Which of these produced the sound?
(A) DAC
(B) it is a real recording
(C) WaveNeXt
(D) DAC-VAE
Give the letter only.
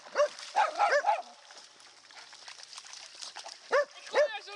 B